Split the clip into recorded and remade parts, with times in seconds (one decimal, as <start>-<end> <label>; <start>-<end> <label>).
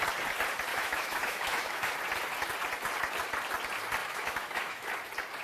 0.0-0.7 recorded; 0.7-1.9 remade; 1.9-4.0 recorded; 4.0-4.9 remade; 4.9-5.4 recorded